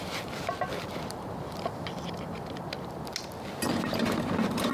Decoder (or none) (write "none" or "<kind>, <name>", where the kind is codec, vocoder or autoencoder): none